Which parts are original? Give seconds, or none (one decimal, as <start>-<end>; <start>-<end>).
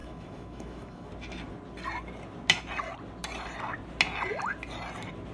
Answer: 1.1-5.3